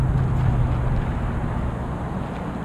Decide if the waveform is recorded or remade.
recorded